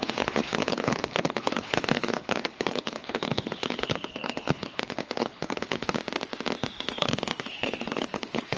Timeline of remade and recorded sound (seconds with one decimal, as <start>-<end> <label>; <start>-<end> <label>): 0.0-6.0 remade; 6.0-6.8 recorded; 6.8-8.6 remade